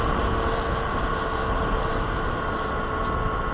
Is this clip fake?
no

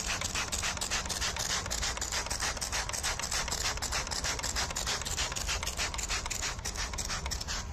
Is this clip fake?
no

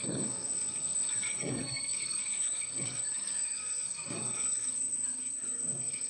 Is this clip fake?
yes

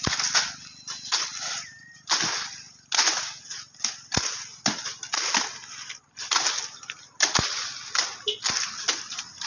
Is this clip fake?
no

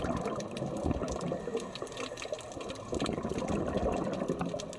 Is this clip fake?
no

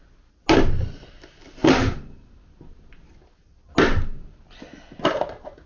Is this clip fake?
no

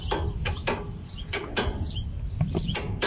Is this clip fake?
no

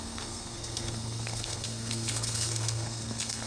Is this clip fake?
yes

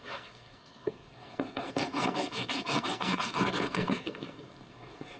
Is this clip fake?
yes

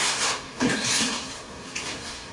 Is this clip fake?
yes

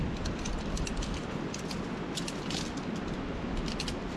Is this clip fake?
no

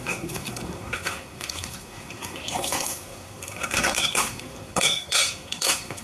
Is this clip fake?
yes